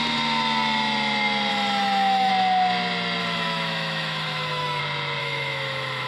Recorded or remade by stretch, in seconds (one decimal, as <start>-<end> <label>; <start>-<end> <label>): 0.0-1.5 recorded; 1.5-2.3 remade; 2.3-3.2 recorded; 3.2-4.8 remade; 4.8-5.2 recorded; 5.2-6.1 remade